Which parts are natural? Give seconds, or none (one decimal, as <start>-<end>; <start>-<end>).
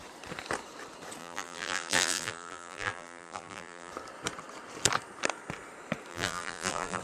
0.0-1.2; 3.9-6.1